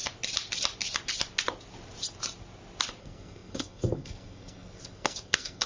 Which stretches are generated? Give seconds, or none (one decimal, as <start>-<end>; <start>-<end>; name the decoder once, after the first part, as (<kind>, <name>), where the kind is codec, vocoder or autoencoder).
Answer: 3.0-5.7 (codec, SNAC)